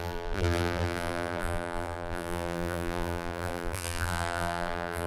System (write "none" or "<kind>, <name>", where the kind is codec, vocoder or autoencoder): vocoder, BigVGAN v2